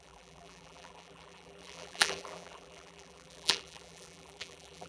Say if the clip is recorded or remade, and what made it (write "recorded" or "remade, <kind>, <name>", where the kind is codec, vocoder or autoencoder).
remade, vocoder, BigVGAN v2